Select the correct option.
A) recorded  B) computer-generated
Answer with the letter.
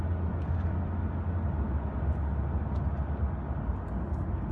A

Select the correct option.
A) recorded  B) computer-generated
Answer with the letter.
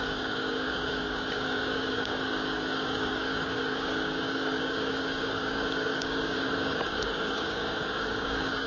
B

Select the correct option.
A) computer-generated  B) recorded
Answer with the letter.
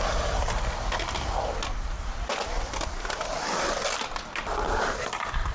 B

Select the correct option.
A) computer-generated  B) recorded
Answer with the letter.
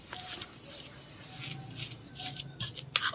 B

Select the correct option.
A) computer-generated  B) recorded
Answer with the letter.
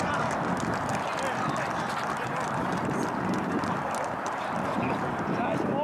B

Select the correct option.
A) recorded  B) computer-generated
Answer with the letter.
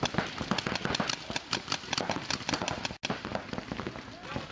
A